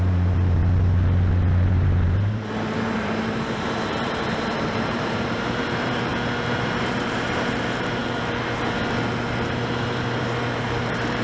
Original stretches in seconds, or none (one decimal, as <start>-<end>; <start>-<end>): 0.6-1.7; 6.1-6.9; 8.0-9.5

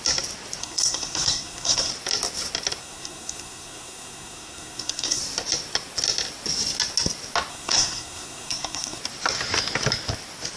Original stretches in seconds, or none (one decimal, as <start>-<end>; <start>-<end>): 0.0-0.6; 1.9-2.8; 5.2-7.5; 9.0-10.6

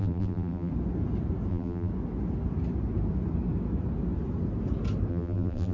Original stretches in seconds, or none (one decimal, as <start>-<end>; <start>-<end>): 0.7-1.5; 1.9-5.1

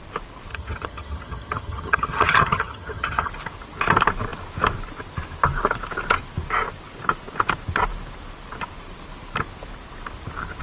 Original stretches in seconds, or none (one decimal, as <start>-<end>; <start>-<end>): 0.0-0.5; 3.3-10.6

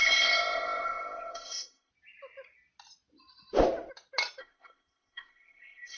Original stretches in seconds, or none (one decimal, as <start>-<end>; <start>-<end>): 1.9-4.4

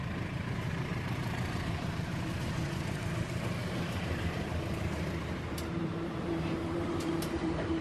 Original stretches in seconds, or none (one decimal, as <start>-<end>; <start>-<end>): 0.0-0.9; 5.2-5.8